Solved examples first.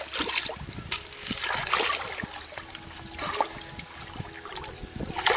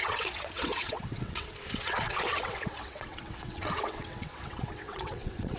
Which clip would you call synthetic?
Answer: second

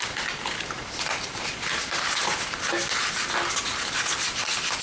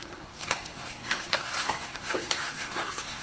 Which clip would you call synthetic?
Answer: second